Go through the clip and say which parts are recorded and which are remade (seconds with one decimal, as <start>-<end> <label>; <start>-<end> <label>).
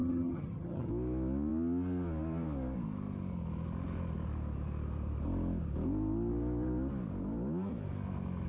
0.0-0.9 remade; 0.9-8.5 recorded